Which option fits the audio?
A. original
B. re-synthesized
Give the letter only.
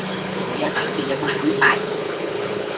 B